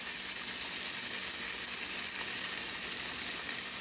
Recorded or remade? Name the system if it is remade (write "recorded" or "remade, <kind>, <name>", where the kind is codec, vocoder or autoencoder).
recorded